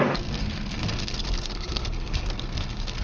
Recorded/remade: remade